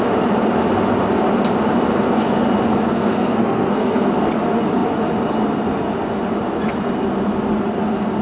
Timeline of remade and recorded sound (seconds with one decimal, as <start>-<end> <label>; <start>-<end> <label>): 0.0-2.7 recorded; 2.7-4.1 remade; 4.1-8.2 recorded